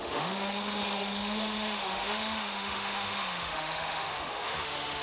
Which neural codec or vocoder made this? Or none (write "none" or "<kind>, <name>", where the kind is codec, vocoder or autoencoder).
autoencoder, DAC-VAE